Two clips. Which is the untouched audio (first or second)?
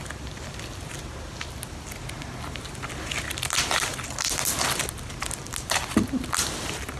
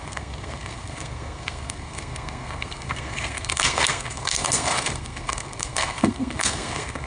first